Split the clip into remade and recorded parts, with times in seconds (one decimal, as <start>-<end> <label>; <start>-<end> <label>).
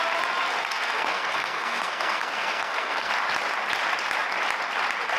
0.0-0.6 recorded; 0.6-3.1 remade; 3.1-5.2 recorded